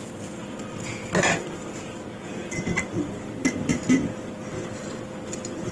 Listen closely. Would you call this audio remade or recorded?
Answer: recorded